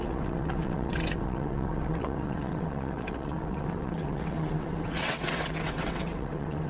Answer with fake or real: fake